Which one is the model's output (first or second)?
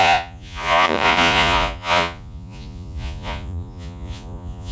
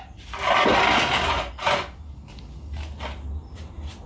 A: first